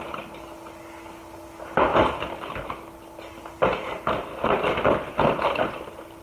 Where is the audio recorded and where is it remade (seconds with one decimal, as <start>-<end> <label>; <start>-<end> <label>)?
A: 0.0-6.2 recorded